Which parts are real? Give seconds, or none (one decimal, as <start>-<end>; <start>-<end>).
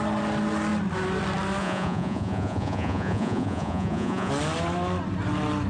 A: 0.0-1.6; 4.3-5.7